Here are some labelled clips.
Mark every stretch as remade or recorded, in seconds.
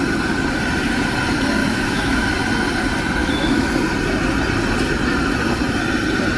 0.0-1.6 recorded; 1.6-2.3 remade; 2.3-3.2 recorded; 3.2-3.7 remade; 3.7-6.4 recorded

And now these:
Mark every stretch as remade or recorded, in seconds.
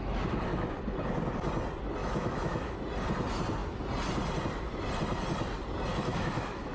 0.0-0.8 remade; 0.8-2.0 recorded; 2.0-2.8 remade; 2.8-5.9 recorded; 5.9-6.7 remade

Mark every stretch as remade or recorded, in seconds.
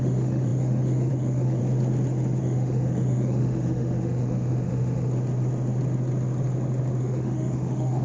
0.0-1.6 remade; 1.6-2.4 recorded; 2.4-5.1 remade; 5.1-7.0 recorded; 7.0-8.0 remade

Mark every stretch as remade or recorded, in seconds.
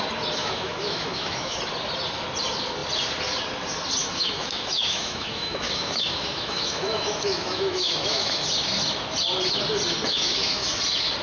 0.0-0.4 recorded; 0.4-1.6 remade; 1.6-4.0 recorded; 4.0-8.5 remade; 8.5-10.1 recorded; 10.1-10.7 remade; 10.7-11.2 recorded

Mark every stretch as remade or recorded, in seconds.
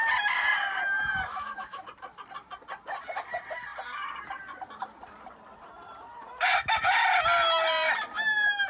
0.0-1.3 recorded; 1.3-1.9 remade; 1.9-8.7 recorded